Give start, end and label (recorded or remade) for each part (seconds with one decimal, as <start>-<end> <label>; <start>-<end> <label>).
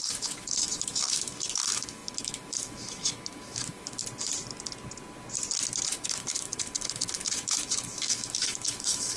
0.0-4.0 remade; 4.0-5.9 recorded; 5.9-9.2 remade